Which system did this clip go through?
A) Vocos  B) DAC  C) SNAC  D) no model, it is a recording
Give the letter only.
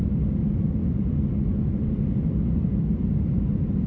D